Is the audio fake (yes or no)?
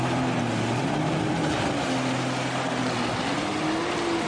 no